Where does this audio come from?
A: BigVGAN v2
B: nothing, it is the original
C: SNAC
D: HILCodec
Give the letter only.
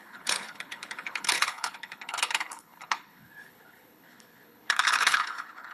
D